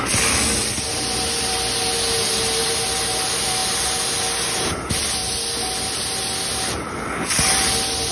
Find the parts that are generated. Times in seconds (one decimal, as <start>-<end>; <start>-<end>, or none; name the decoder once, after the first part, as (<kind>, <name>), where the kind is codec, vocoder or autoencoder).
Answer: none